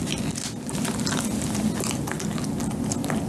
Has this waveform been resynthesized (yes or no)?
no